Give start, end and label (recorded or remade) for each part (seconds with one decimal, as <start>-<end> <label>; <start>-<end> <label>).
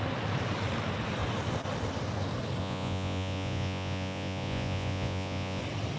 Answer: 0.0-2.6 recorded; 2.6-5.6 remade; 5.6-6.0 recorded